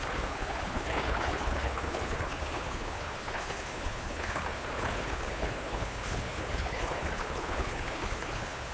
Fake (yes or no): yes